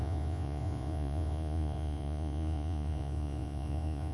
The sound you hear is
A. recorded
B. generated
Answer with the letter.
B